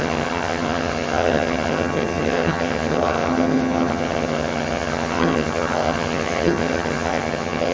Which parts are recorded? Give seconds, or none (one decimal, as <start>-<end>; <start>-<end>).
none